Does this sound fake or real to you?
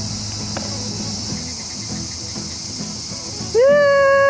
real